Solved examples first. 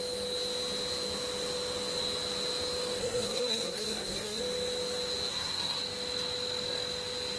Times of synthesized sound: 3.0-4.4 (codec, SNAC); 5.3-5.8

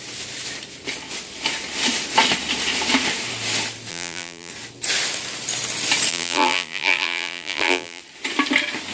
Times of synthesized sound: 3.9-4.5 (vocoder, BigVGAN v2); 6.1-8.0

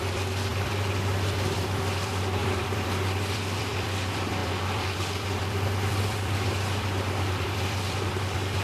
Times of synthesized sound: 0.0-8.6 (vocoder, BigVGAN v2)

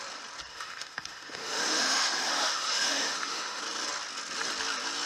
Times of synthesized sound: 0.5-3.6 (autoencoder, DAC-VAE)

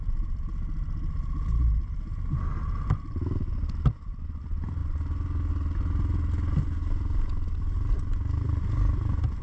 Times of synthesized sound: none

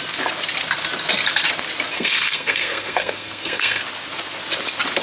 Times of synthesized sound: 1.9-3.8 (codec, SNAC)